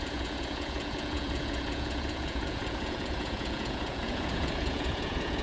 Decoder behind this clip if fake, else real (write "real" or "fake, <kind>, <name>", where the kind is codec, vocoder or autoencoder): fake, vocoder, Vocos